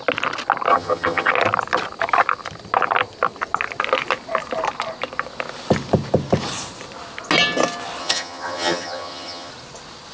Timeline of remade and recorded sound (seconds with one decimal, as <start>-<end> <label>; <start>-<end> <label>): 0.0-0.7 recorded; 0.7-1.3 remade; 1.3-8.0 recorded; 8.0-9.5 remade; 9.5-10.1 recorded